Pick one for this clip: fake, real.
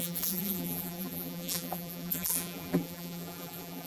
fake